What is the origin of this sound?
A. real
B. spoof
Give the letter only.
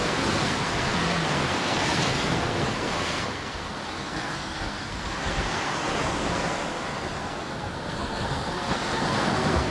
B